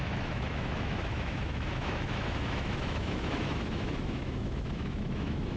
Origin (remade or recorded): remade